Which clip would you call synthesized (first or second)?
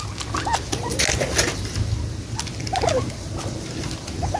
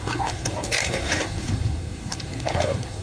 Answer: second